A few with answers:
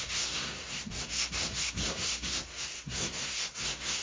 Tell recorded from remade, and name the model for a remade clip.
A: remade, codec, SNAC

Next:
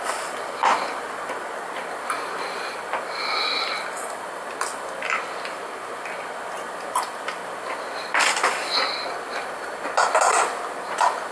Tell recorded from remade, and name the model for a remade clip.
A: recorded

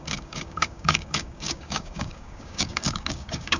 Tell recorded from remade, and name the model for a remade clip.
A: remade, codec, DAC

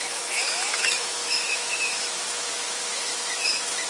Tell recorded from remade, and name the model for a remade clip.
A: remade, autoencoder, DAC-VAE